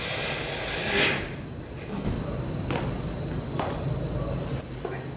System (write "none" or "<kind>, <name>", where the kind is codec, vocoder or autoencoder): none